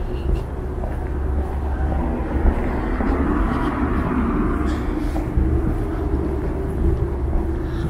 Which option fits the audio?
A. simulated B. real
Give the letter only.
B